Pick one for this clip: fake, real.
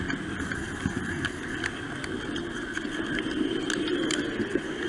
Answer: real